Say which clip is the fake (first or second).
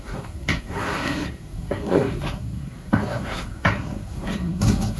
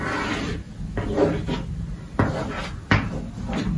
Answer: first